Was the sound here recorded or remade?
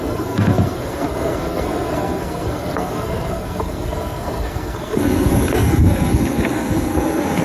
remade